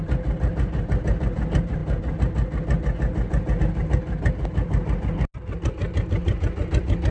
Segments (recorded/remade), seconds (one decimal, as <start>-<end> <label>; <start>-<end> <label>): 0.0-7.1 recorded